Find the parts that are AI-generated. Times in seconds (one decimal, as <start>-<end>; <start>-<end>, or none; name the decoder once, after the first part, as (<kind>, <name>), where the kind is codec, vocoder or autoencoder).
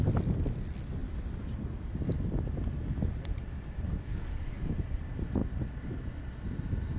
4.1-4.7 (codec, DAC)